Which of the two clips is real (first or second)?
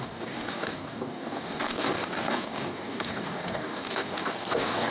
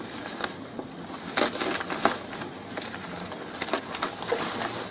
second